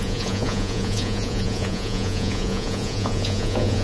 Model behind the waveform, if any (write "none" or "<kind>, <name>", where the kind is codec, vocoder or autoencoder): vocoder, Vocos